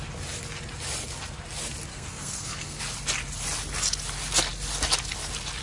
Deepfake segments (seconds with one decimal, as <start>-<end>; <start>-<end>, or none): 1.9-2.8